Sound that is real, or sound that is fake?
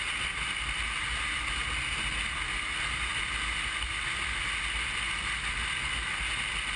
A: real